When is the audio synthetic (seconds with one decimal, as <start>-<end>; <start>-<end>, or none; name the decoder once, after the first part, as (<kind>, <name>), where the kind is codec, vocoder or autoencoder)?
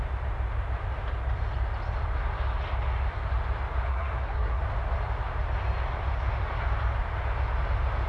3.9-4.6 (codec, SNAC)